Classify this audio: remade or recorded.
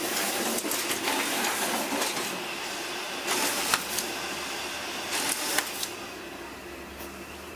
recorded